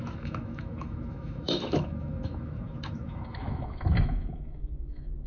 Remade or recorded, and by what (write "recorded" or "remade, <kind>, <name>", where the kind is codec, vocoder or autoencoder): remade, autoencoder, DAC-VAE